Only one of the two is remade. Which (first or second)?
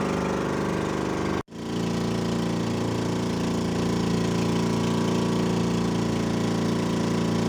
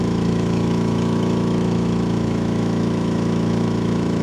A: second